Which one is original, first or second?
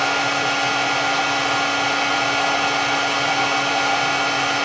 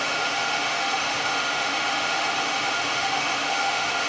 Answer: first